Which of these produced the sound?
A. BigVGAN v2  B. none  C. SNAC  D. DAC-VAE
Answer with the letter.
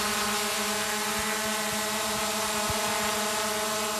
B